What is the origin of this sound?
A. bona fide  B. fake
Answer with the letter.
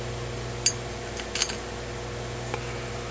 A